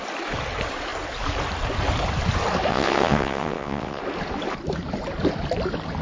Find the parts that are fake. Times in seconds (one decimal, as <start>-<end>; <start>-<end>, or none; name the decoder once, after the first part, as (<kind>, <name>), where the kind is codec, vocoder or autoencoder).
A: 2.7-4.0 (vocoder, WaveNeXt)